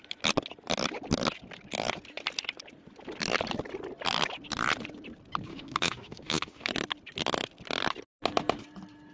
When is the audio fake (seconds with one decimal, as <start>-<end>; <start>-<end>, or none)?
5.5-6.7